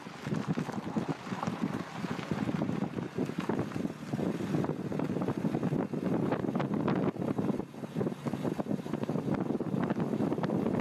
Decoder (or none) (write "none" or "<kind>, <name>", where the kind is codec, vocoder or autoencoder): none